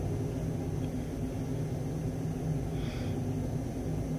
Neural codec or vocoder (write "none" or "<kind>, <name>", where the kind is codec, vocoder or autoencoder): none